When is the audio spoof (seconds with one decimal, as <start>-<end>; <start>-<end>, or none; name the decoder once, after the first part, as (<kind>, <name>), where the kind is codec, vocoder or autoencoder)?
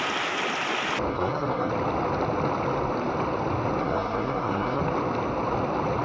1.1-1.7 (codec, SNAC); 3.8-4.8